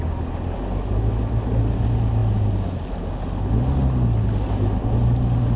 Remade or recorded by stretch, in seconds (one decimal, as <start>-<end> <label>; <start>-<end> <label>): 0.0-5.6 recorded